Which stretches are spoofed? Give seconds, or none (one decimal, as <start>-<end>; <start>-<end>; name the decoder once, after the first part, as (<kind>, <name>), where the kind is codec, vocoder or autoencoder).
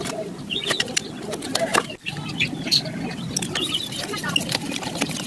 none